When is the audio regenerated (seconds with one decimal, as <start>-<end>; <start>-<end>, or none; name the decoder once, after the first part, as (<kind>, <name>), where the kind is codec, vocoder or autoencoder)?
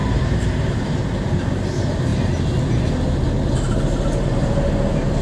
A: 0.0-1.4 (vocoder, BigVGAN v2)